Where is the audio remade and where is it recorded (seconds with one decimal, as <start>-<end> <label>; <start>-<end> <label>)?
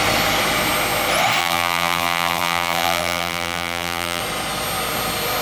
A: 0.0-1.4 recorded; 1.4-4.2 remade; 4.2-5.4 recorded